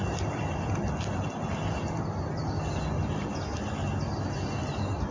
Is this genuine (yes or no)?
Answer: yes